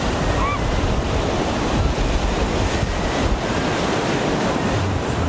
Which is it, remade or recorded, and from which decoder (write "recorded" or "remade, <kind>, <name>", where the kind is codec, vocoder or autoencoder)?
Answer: remade, vocoder, BigVGAN v2